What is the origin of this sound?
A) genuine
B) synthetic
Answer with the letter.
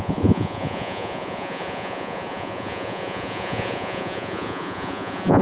B